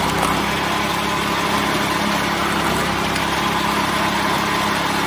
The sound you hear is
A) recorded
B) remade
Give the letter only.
A